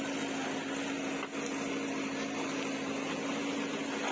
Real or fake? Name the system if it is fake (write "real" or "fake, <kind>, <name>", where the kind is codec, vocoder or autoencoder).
real